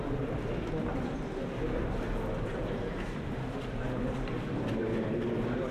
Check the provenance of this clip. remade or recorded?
recorded